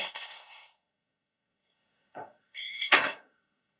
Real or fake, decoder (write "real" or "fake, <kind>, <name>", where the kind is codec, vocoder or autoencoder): fake, codec, SNAC